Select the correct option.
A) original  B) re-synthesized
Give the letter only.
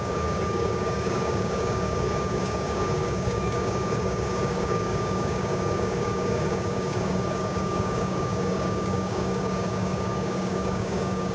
B